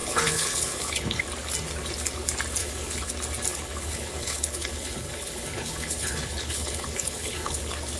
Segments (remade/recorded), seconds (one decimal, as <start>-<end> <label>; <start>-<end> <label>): 0.0-1.2 remade; 1.2-2.6 recorded; 2.6-3.1 remade; 3.1-3.5 recorded; 3.5-7.6 remade; 7.6-8.0 recorded